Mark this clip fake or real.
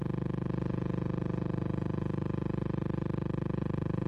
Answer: real